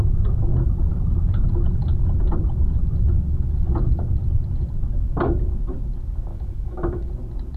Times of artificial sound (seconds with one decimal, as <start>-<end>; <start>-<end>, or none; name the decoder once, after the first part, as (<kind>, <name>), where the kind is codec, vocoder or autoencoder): 6.3-7.1 (autoencoder, DAC-VAE)